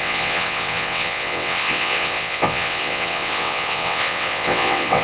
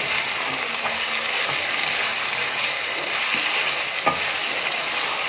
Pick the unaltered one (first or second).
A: second